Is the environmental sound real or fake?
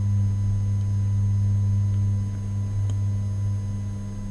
real